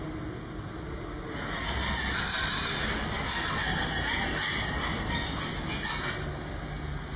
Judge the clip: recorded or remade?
recorded